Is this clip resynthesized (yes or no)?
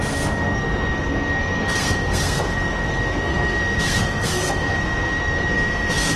yes